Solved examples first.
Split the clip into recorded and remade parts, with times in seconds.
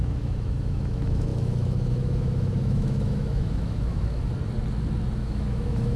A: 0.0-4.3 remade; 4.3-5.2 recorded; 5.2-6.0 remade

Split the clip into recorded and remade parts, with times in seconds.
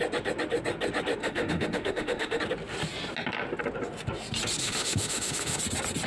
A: 0.0-1.2 recorded; 1.2-2.4 remade; 2.4-4.6 recorded; 4.6-5.6 remade; 5.6-6.1 recorded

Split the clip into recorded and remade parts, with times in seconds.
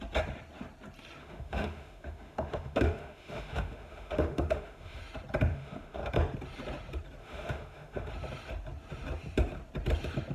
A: 0.0-1.2 recorded; 1.2-5.0 remade; 5.0-5.5 recorded; 5.5-6.1 remade; 6.1-7.2 recorded; 7.2-8.1 remade; 8.1-10.3 recorded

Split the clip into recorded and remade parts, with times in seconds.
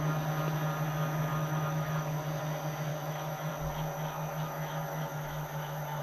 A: 0.0-1.3 recorded; 1.3-2.4 remade; 2.4-2.9 recorded; 2.9-3.5 remade; 3.5-4.3 recorded; 4.3-6.0 remade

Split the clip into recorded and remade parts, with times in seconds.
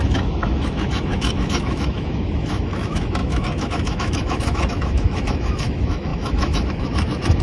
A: 0.0-7.4 remade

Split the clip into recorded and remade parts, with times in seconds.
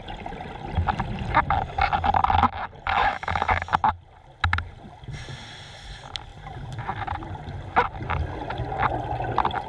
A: 0.0-3.0 recorded; 3.0-3.7 remade; 3.7-9.7 recorded